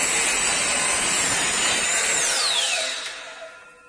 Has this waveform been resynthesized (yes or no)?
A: no